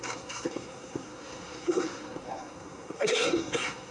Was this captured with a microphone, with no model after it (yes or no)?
no